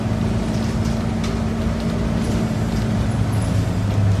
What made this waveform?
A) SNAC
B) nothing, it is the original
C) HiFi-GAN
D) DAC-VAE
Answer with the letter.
B